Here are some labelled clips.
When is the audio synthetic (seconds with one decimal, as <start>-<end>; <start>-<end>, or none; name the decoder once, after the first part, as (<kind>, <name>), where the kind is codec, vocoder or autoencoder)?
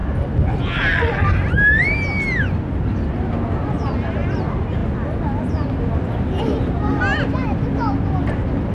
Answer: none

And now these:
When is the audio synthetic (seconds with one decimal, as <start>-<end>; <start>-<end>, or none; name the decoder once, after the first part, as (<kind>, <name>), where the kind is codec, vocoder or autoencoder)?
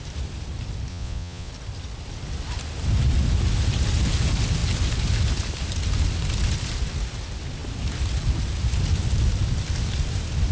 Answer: 0.9-1.5 (vocoder, Vocos)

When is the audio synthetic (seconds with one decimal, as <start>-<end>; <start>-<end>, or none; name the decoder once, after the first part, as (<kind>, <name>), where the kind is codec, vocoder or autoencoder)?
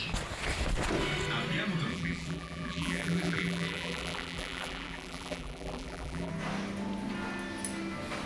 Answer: 1.9-6.3 (vocoder, BigVGAN v2)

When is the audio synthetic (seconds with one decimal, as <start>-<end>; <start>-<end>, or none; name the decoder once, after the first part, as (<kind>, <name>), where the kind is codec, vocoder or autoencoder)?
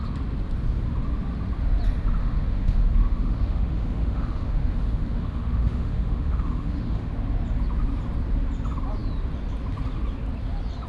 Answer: 2.2-7.1 (autoencoder, DAC-VAE)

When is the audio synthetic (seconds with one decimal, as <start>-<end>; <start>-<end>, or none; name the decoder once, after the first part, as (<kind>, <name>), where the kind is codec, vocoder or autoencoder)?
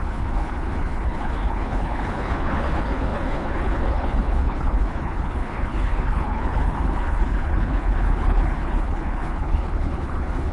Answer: 0.0-10.5 (codec, HILCodec)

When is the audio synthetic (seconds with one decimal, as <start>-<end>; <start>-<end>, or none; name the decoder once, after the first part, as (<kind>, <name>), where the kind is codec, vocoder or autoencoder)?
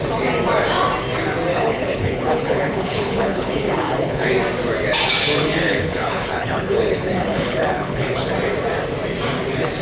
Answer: 1.5-4.3 (codec, HILCodec); 5.6-8.3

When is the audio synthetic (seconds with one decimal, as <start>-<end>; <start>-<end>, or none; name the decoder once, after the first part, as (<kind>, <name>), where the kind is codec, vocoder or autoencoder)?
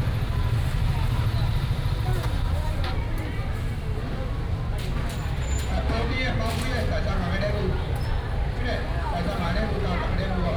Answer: none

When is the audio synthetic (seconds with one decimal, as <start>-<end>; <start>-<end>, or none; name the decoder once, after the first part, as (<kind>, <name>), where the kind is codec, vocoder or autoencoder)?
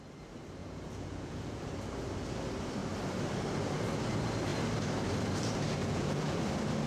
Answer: 0.6-1.6 (vocoder, Vocos); 5.8-6.4